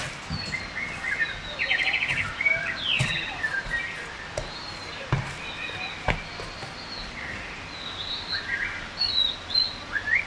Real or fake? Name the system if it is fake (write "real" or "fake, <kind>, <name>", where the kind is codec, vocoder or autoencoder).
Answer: real